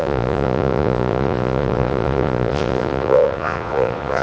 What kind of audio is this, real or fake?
fake